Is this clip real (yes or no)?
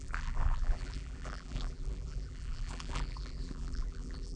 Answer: no